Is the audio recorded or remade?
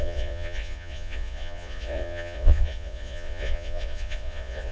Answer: remade